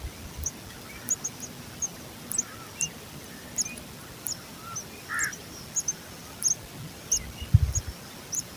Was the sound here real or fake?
real